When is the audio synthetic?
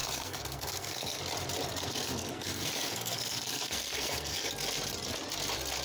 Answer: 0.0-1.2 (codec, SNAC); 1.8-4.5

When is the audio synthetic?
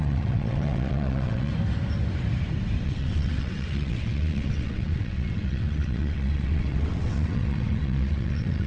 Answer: 0.0-1.5 (vocoder, WaveNeXt); 2.8-8.7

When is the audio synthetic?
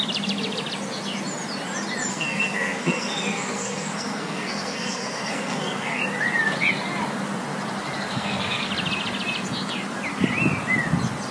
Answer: 2.1-6.0 (codec, SNAC); 8.1-8.7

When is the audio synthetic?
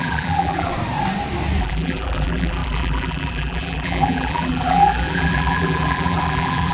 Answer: 0.0-0.7 (vocoder, BigVGAN v2); 1.6-6.7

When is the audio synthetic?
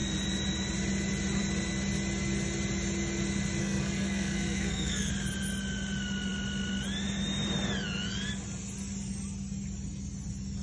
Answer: 3.6-5.1 (codec, SNAC)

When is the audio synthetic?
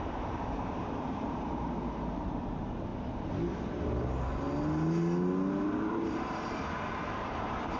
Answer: 0.0-2.9 (vocoder, BigVGAN v2); 5.6-7.8